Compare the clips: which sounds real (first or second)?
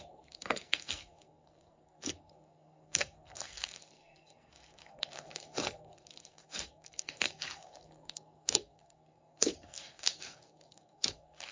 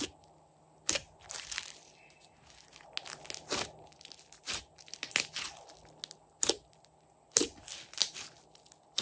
second